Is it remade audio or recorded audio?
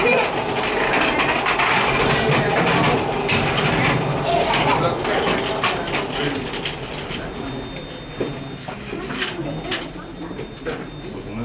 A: recorded